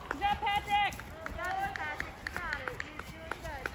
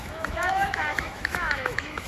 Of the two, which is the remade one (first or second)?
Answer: second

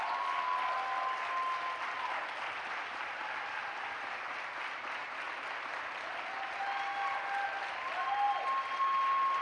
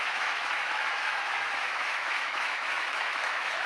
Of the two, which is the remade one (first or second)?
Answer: second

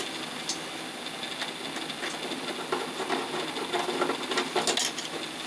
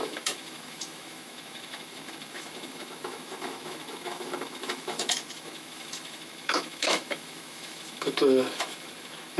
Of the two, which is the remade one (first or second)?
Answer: second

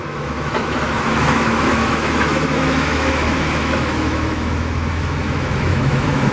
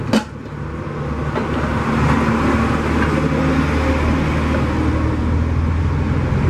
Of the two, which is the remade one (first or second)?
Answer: first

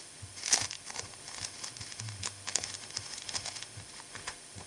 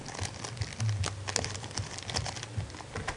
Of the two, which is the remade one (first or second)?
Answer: first